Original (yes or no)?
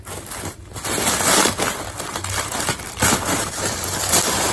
no